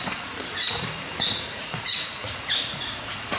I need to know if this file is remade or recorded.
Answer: remade